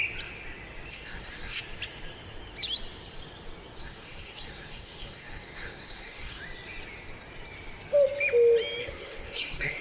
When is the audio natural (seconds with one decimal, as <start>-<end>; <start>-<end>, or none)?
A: 0.0-0.9; 1.6-3.8; 6.4-8.8